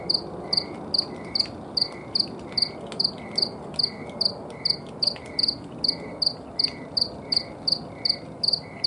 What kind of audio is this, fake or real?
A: real